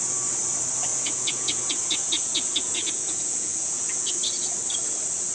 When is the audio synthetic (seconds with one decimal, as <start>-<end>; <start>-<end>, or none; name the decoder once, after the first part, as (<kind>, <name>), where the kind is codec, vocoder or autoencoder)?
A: 0.9-4.1 (vocoder, Vocos)